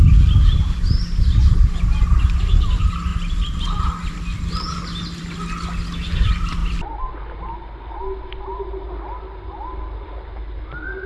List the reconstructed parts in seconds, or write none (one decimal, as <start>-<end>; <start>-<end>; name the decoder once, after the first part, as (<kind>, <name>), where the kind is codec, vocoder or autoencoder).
none